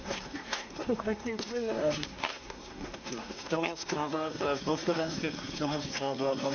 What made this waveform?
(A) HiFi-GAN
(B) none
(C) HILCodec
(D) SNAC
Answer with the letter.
D